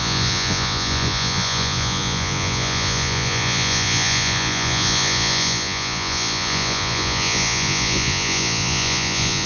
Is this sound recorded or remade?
remade